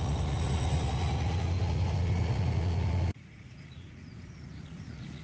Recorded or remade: remade